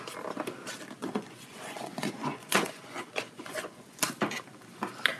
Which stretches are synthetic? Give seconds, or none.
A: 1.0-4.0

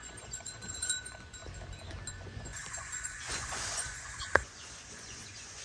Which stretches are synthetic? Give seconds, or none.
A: 0.0-1.4; 2.1-5.6

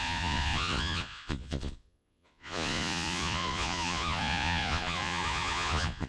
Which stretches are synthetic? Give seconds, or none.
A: 0.0-6.1

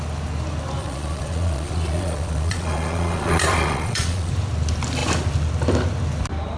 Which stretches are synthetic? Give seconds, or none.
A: 0.8-4.3

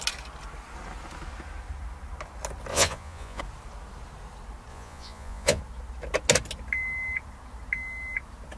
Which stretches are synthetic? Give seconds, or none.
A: 2.7-3.4; 4.7-5.6

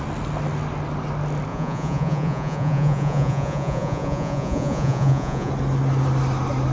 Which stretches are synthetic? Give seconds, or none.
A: 1.5-5.5